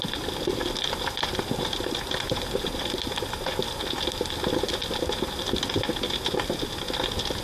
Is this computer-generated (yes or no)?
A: no